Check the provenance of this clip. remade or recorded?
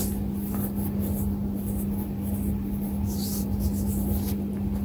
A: recorded